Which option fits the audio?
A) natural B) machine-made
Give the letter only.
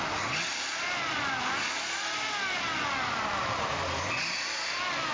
A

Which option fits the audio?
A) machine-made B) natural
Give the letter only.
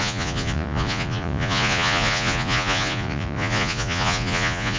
A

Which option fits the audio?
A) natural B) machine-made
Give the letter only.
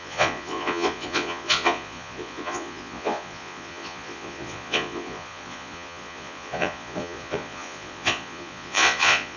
B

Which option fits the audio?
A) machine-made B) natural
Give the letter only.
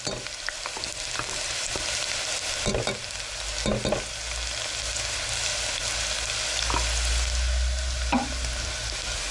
B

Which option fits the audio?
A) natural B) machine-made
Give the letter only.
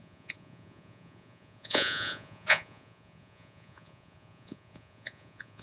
B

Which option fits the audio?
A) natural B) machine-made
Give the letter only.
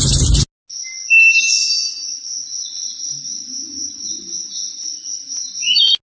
A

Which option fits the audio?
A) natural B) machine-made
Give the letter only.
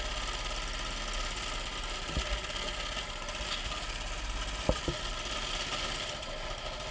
A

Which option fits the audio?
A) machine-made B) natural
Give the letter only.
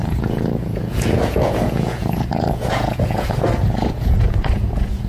A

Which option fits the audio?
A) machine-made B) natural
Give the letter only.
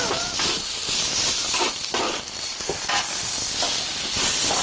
B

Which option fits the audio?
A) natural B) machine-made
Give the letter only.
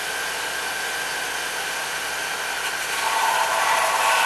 A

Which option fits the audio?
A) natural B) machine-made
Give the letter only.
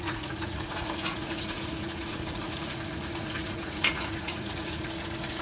B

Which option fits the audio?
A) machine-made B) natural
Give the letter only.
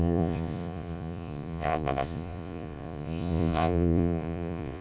A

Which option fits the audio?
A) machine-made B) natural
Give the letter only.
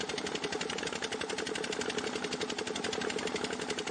B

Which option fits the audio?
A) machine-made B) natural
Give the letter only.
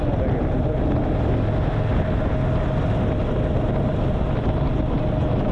B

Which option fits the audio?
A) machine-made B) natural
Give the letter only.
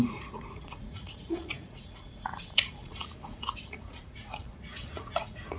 A